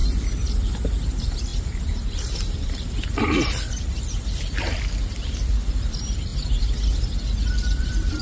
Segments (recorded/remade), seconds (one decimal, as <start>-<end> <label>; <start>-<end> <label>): 0.0-6.3 remade; 6.3-7.6 recorded; 7.6-8.2 remade